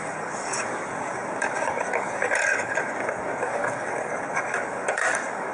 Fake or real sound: fake